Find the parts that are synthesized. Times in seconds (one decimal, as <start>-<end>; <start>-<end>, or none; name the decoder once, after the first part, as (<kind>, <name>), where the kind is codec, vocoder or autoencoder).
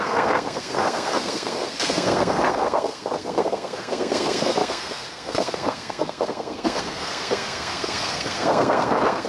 0.0-9.3 (codec, SNAC)